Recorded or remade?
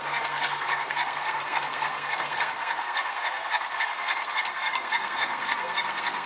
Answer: remade